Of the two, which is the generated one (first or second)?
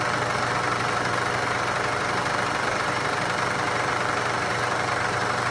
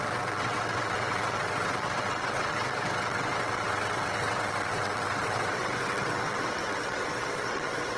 second